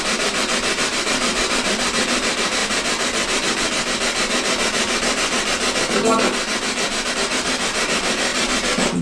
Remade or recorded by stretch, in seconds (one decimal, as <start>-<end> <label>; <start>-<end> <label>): 0.0-2.6 remade; 2.6-7.1 recorded; 7.1-9.0 remade